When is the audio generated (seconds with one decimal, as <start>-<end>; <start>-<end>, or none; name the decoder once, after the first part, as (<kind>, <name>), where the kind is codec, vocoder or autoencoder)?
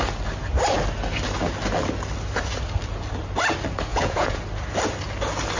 3.9-4.4 (vocoder, Vocos)